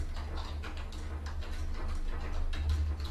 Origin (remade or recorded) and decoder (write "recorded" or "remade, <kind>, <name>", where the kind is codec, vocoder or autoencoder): recorded